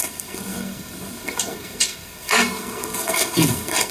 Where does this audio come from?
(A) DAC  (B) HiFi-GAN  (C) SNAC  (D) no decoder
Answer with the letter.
C